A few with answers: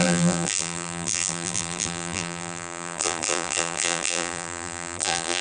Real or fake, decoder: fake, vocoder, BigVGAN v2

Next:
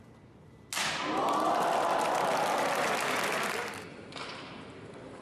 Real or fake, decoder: real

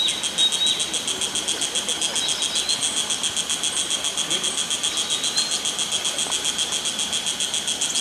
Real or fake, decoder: real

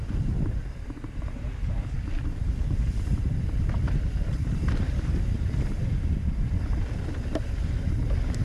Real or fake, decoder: fake, vocoder, BigVGAN v2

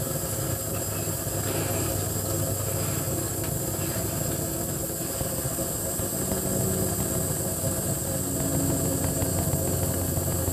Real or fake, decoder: real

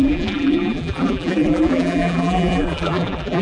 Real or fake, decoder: fake, vocoder, BigVGAN v2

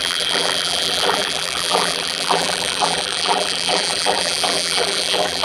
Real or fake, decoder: fake, vocoder, BigVGAN v2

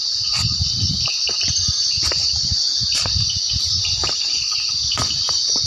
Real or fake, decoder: fake, vocoder, BigVGAN v2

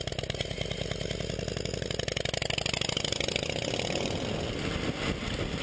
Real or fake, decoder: real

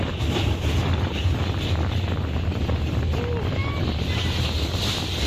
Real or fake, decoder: real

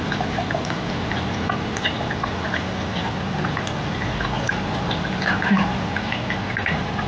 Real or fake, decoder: real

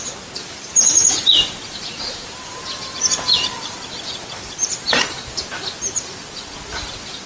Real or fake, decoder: fake, vocoder, BigVGAN v2